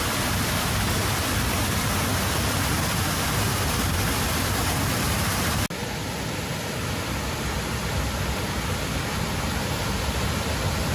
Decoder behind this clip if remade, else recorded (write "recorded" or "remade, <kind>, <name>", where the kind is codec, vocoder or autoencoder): recorded